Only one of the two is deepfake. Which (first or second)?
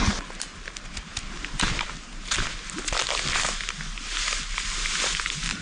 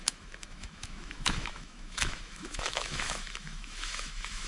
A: second